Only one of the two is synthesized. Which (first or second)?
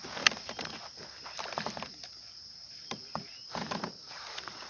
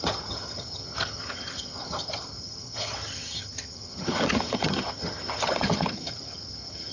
second